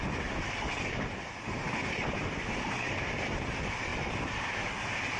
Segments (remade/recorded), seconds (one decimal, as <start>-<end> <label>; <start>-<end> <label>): 0.0-5.2 recorded